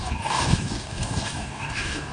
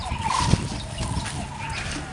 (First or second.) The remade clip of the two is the first